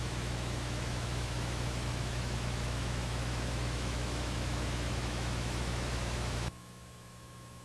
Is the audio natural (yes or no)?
no